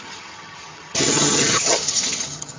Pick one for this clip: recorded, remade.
remade